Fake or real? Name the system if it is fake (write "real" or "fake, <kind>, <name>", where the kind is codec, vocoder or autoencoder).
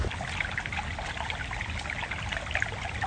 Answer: real